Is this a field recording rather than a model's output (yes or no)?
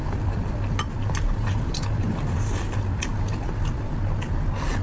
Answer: yes